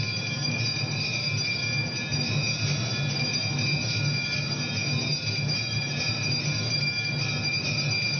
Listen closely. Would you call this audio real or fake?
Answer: real